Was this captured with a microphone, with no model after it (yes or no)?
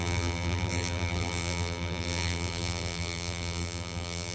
no